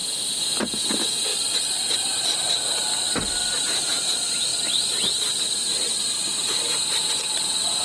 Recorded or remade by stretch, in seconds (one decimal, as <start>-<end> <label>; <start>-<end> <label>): 0.0-1.3 remade; 1.3-3.6 recorded; 3.6-4.5 remade; 4.5-7.0 recorded; 7.0-7.8 remade